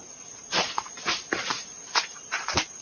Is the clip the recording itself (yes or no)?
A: no